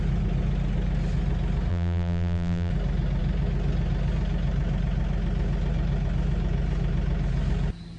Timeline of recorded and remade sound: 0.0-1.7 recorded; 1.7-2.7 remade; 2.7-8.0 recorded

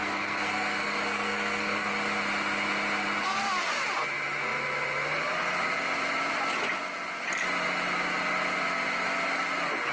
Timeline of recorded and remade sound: 0.0-1.9 remade; 1.9-9.9 recorded

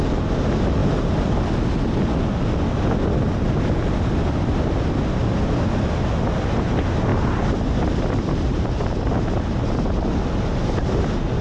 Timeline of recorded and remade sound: 0.0-0.8 recorded; 0.8-1.4 remade; 1.4-7.1 recorded; 7.1-9.5 remade; 9.5-11.4 recorded

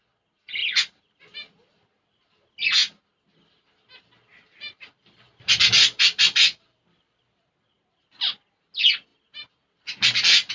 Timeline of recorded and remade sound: 0.0-0.6 recorded; 0.6-1.2 remade; 1.2-4.3 recorded; 4.3-7.4 remade; 7.4-10.5 recorded

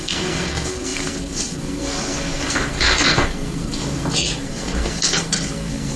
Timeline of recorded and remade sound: 0.0-6.0 remade

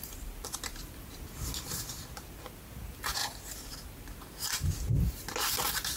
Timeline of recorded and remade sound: 0.0-6.0 recorded

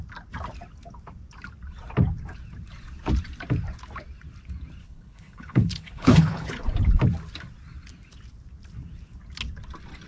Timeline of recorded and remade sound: 0.0-4.8 recorded; 4.8-6.6 remade; 6.6-10.1 recorded

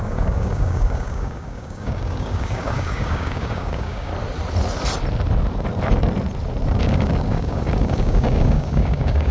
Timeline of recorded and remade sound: 0.0-4.1 remade; 4.1-6.8 recorded; 6.8-9.3 remade